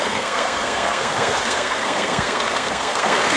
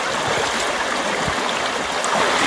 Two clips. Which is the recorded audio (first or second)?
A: second